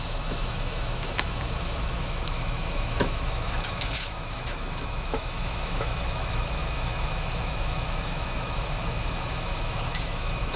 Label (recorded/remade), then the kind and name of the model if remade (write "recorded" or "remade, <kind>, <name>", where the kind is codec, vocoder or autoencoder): remade, autoencoder, DAC-VAE